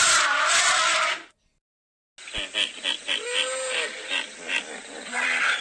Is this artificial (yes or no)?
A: no